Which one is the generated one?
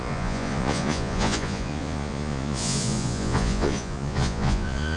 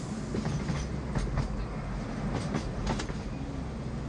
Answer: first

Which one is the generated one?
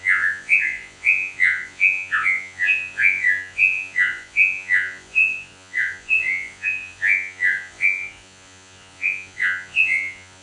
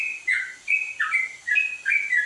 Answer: first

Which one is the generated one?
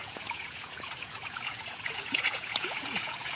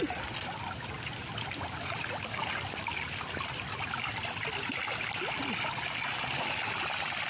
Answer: first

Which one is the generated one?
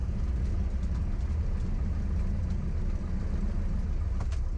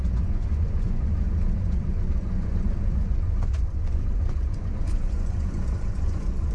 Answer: second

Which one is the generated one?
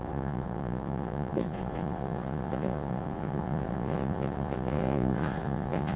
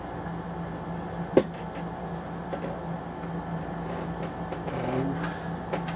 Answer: first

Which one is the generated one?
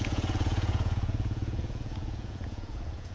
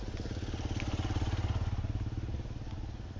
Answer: first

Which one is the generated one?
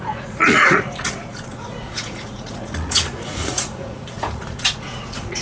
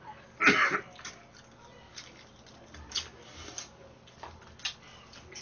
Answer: first